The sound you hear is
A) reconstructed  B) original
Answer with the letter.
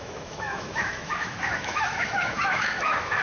A